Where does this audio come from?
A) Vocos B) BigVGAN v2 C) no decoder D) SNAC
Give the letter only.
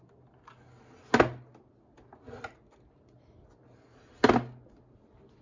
C